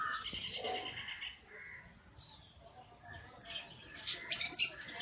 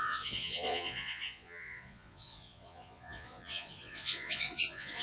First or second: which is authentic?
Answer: first